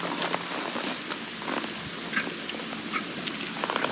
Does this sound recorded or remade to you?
recorded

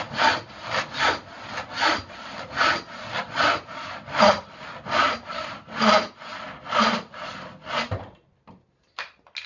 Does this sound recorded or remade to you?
recorded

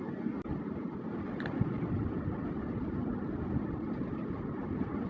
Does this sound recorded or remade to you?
recorded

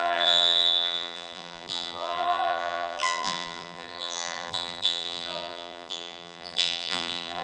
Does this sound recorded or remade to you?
remade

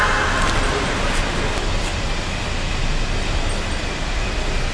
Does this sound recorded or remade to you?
recorded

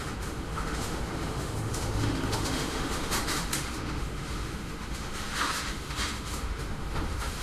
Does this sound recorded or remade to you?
remade